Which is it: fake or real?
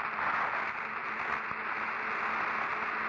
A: real